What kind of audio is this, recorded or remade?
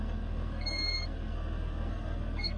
remade